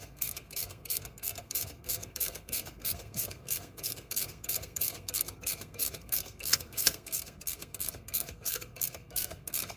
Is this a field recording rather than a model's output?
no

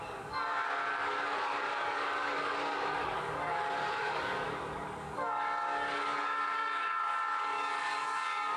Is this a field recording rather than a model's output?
no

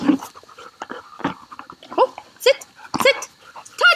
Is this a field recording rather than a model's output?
yes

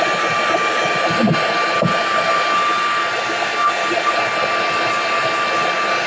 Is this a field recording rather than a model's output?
yes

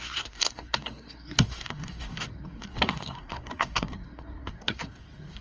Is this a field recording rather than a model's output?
no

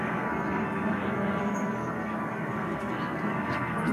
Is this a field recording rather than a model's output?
no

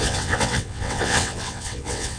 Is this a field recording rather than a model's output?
no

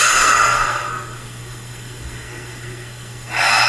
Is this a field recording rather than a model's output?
no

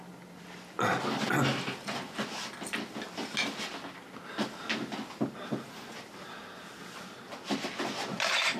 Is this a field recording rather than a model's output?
yes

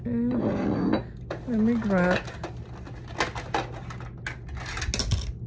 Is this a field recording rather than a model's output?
yes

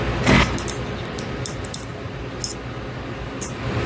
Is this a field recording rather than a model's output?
yes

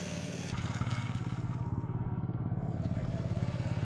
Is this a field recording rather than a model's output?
no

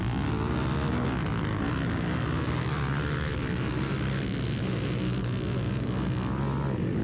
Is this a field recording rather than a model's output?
yes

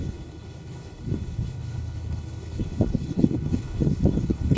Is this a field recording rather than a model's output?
no